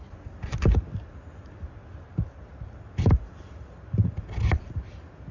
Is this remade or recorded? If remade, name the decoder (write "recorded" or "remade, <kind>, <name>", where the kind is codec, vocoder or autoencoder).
recorded